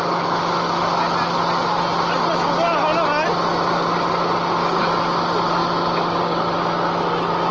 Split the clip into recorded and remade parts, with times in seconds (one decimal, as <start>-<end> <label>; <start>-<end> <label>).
0.0-7.5 recorded